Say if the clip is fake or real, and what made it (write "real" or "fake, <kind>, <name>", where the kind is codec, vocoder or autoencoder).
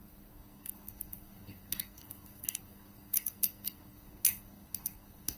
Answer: fake, codec, SNAC